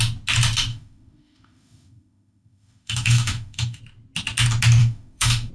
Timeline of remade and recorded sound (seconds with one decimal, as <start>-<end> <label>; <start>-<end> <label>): 0.0-0.7 recorded; 0.7-3.8 remade; 3.8-4.8 recorded; 4.8-5.5 remade